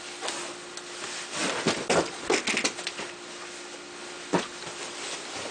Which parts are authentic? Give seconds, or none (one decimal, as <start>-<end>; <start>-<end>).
0.0-5.5